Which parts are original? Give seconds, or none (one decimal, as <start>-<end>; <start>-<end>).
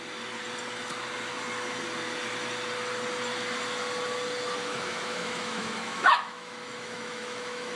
0.0-4.6